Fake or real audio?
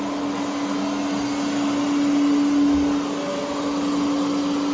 real